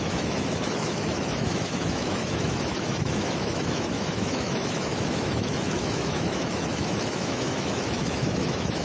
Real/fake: fake